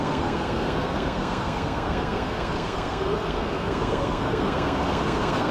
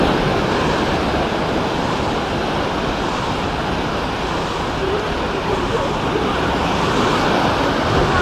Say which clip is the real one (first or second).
second